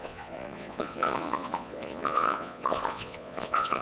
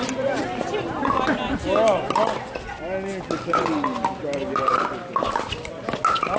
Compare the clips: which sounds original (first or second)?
second